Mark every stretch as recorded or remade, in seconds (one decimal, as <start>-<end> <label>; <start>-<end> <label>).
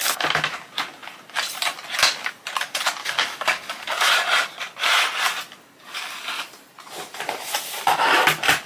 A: 0.0-3.0 recorded; 3.0-4.1 remade; 4.1-8.7 recorded